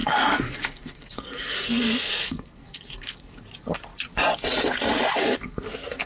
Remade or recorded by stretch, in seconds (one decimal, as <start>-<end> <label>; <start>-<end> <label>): 0.0-3.4 remade; 3.4-5.2 recorded; 5.2-6.1 remade